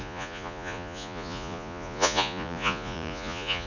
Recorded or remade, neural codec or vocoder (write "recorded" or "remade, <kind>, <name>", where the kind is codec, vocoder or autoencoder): remade, vocoder, Vocos